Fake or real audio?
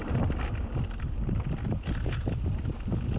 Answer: real